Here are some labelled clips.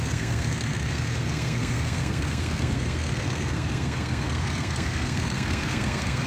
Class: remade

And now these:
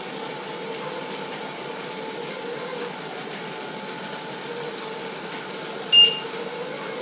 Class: recorded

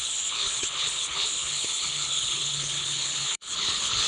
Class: remade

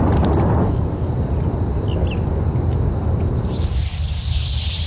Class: recorded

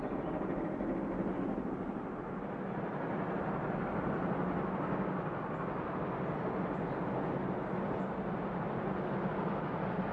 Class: recorded